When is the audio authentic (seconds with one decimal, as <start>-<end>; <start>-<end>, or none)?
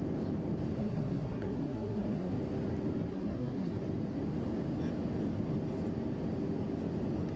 0.0-0.8; 2.4-3.1; 3.7-7.4